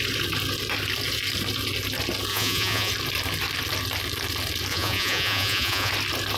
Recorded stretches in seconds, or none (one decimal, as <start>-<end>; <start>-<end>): 0.0-2.3; 2.9-4.7; 5.9-6.4